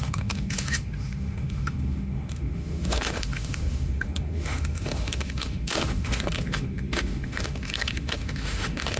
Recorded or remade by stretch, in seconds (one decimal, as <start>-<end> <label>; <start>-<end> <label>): 0.0-9.0 remade